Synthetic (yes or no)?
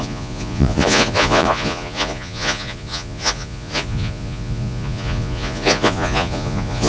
yes